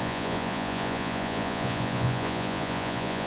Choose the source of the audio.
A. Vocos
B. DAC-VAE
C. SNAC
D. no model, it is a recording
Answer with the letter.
A